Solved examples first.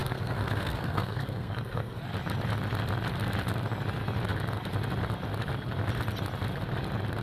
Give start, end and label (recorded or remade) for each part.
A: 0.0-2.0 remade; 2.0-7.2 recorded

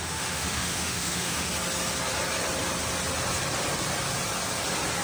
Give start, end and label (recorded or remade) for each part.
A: 0.0-1.5 remade; 1.5-5.0 recorded

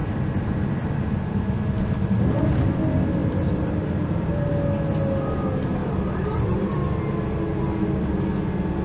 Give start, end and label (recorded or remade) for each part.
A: 0.0-1.4 remade; 1.4-3.2 recorded; 3.2-4.3 remade; 4.3-5.8 recorded; 5.8-7.0 remade; 7.0-7.5 recorded; 7.5-8.3 remade; 8.3-8.8 recorded

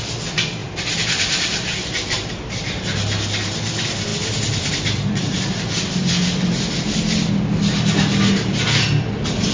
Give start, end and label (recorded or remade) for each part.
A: 0.0-0.6 recorded; 0.6-2.8 remade; 2.8-4.1 recorded; 4.1-7.4 remade; 7.4-9.5 recorded

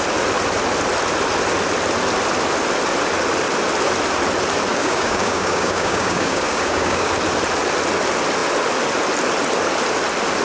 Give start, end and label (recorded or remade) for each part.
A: 0.0-4.7 recorded; 4.7-7.1 remade; 7.1-10.4 recorded